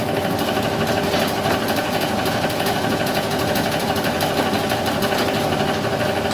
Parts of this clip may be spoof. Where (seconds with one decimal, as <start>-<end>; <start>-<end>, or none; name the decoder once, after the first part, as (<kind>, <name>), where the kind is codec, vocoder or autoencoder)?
1.8-3.9 (vocoder, Vocos)